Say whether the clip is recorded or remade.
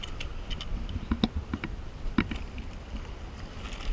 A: recorded